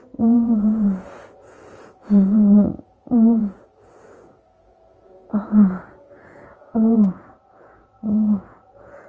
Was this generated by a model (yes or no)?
yes